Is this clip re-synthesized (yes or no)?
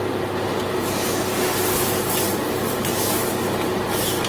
no